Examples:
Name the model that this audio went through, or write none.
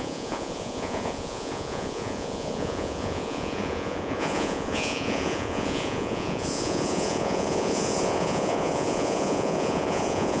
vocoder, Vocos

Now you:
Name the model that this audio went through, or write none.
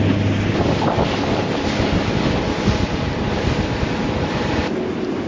none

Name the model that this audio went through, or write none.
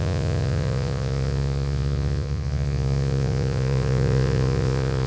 vocoder, Vocos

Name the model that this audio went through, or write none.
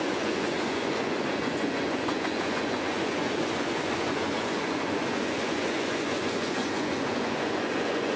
vocoder, Vocos